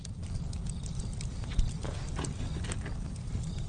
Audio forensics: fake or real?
real